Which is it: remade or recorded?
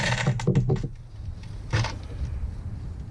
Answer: recorded